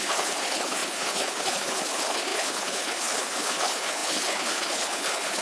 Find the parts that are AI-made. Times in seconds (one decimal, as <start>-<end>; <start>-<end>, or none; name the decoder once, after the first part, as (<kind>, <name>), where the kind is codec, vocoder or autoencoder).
0.0-5.4 (codec, HILCodec)